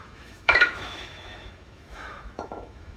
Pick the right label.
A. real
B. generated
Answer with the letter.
B